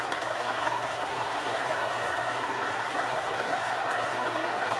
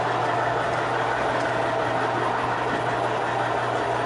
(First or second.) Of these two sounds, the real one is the second